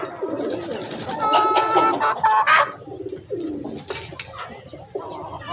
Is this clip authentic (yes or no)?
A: yes